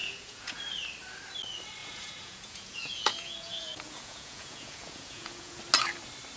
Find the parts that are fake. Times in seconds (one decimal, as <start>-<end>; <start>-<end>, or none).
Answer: 0.0-0.6; 1.8-5.6